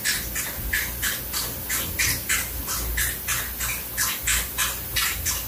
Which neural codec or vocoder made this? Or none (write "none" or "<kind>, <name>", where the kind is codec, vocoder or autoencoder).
none